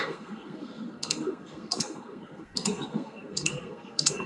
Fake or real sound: fake